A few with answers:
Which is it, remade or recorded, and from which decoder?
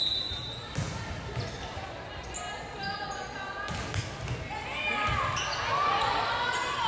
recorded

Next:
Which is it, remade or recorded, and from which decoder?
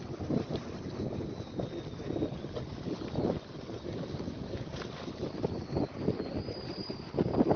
recorded